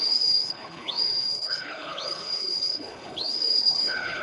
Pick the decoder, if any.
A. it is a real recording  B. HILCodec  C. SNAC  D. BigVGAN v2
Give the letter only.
B